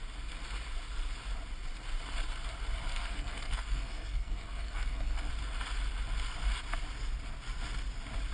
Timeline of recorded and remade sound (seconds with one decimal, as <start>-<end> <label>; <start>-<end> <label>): 0.0-2.9 recorded; 2.9-5.3 remade; 5.3-8.3 recorded